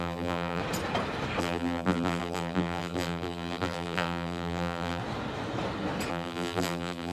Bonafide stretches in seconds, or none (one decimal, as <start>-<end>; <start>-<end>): 0.6-1.4; 5.0-6.1